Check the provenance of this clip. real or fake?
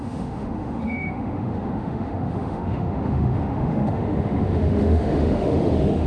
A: fake